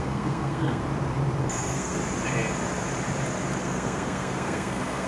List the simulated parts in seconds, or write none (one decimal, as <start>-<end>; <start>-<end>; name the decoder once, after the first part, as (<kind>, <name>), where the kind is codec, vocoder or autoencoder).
0.0-0.8 (codec, SNAC); 1.4-2.0; 3.6-5.1